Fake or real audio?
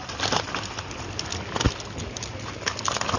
fake